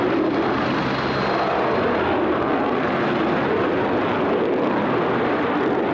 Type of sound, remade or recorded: recorded